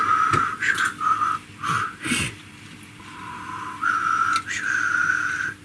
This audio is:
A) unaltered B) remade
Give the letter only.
A